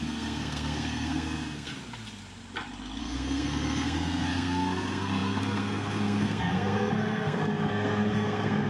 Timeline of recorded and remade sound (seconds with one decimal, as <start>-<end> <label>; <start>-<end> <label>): 0.0-1.7 remade; 1.7-3.0 recorded; 3.0-8.7 remade